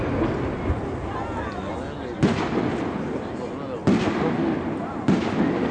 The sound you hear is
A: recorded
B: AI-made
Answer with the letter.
A